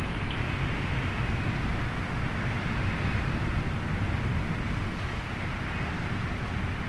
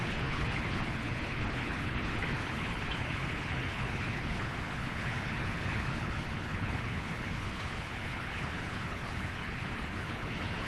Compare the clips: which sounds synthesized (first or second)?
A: second